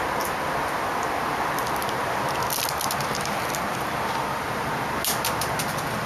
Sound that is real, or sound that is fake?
real